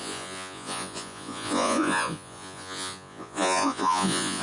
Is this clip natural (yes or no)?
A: no